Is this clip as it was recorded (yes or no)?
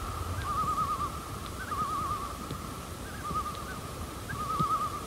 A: yes